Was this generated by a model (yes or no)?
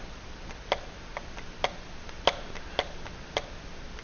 no